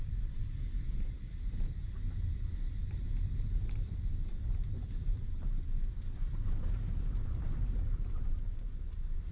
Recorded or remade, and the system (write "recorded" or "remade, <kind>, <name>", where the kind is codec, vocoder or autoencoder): remade, vocoder, BigVGAN v2